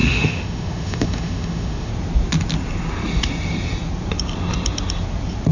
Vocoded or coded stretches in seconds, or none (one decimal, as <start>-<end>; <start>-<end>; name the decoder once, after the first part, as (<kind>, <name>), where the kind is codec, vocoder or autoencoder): 0.0-1.9 (autoencoder, DAC-VAE)